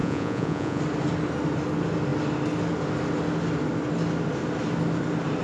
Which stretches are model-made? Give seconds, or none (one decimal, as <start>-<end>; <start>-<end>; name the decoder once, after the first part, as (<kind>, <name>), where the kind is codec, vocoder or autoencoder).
0.0-0.8 (vocoder, Vocos)